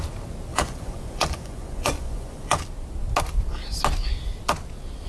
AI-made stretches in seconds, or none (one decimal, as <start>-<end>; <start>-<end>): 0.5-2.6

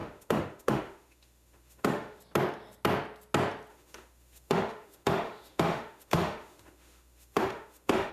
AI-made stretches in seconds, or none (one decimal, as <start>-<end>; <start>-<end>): 0.0-2.2; 3.7-8.1

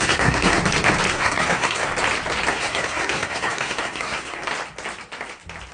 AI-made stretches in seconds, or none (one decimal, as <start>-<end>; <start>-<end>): 0.0-0.6; 1.1-1.9; 2.5-4.5

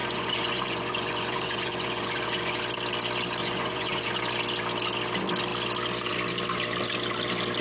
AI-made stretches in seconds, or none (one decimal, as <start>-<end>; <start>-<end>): 0.0-2.6; 3.4-4.1

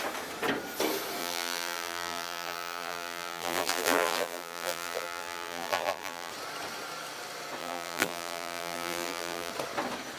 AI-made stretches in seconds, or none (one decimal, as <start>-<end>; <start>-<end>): 1.2-6.3; 7.6-9.5